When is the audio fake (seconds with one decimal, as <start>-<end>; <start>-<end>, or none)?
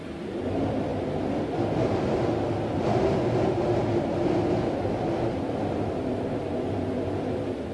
none